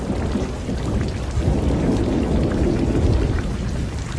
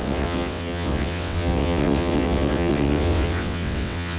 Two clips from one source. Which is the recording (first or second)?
first